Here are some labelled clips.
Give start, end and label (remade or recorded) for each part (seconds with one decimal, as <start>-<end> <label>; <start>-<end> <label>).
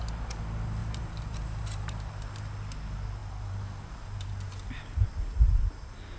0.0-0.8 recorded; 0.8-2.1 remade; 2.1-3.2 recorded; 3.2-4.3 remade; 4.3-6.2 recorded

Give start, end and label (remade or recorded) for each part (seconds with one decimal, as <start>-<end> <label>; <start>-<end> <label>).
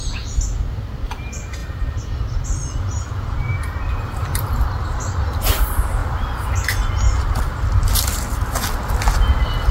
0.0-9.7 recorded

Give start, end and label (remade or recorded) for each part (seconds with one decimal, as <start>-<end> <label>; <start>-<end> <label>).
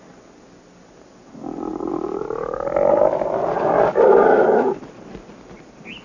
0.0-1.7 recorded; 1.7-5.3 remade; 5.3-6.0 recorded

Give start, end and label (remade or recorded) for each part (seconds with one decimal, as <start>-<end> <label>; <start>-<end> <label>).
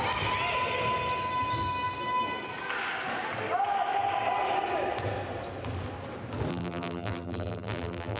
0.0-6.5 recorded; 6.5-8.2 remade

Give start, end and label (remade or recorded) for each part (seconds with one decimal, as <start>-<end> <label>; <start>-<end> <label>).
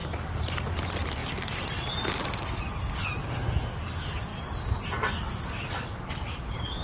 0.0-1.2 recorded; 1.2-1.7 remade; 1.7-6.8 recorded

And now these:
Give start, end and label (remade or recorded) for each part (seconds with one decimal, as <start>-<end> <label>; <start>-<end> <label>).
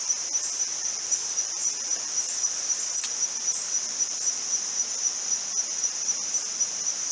0.0-1.6 remade; 1.6-5.9 recorded; 5.9-7.1 remade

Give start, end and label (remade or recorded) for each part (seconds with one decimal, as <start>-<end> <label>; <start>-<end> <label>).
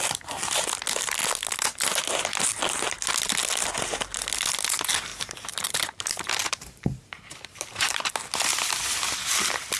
0.0-5.1 recorded; 5.1-5.6 remade; 5.6-6.4 recorded; 6.4-8.1 remade; 8.1-8.5 recorded; 8.5-9.1 remade; 9.1-9.8 recorded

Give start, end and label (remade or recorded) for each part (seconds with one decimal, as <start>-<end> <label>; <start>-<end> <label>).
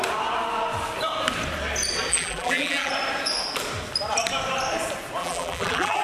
0.0-2.1 recorded; 2.1-2.9 remade; 2.9-5.2 recorded; 5.2-6.0 remade